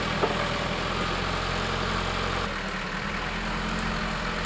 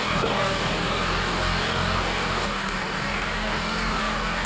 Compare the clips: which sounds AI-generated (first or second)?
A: second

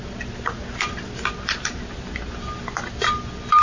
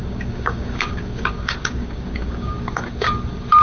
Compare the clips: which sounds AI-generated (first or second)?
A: second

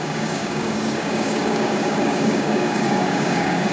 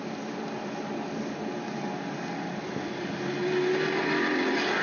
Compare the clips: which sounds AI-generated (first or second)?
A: first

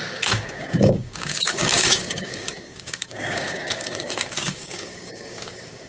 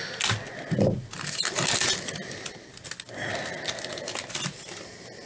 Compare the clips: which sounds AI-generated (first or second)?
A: first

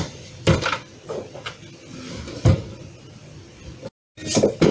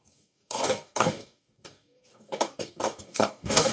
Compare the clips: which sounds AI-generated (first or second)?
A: second